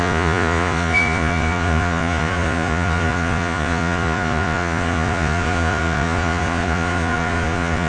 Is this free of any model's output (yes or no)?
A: no